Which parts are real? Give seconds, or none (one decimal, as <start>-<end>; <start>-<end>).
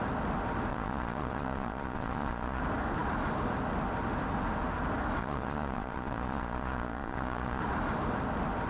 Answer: 0.0-0.7; 2.6-5.2; 7.6-8.7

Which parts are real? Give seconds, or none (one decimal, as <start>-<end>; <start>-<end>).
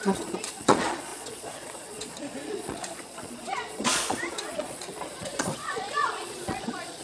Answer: none